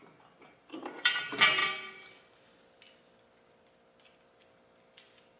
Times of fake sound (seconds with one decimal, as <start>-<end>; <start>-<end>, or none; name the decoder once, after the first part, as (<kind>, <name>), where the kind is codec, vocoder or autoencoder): 0.0-1.6 (vocoder, BigVGAN v2); 4.4-5.4